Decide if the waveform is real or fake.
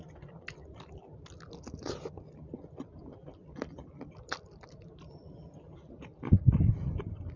real